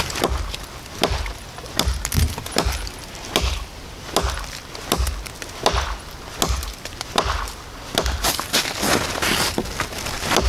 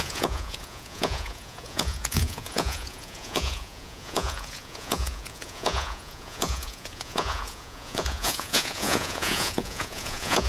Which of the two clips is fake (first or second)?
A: second